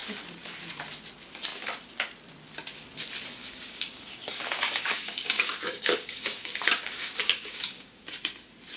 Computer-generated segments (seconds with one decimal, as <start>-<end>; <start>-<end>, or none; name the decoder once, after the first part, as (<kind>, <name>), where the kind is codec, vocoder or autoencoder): 3.4-8.0 (codec, DAC)